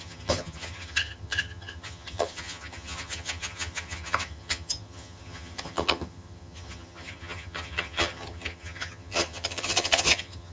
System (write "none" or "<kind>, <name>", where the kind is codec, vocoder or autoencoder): vocoder, HiFi-GAN